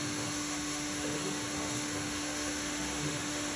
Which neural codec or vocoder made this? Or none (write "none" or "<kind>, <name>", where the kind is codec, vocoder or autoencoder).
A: autoencoder, DAC-VAE